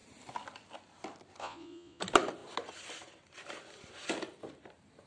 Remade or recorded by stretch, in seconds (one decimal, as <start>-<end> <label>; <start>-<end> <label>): 0.0-1.4 recorded; 1.4-2.0 remade; 2.0-5.1 recorded